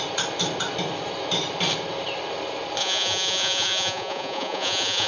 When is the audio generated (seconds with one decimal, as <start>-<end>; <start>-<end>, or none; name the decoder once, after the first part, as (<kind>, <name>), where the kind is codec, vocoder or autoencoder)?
2.8-5.1 (vocoder, Vocos)